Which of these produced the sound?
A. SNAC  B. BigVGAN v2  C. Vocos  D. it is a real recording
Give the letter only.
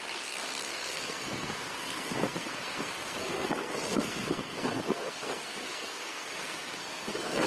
A